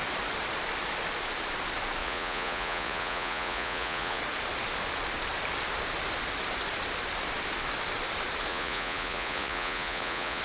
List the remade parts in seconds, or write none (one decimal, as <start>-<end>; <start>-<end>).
2.0-4.2; 8.5-10.4